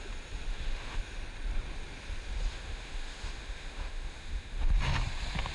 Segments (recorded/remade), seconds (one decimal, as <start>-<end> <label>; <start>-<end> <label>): 0.0-0.5 recorded; 0.5-1.0 remade; 1.0-2.5 recorded; 2.5-4.7 remade; 4.7-5.5 recorded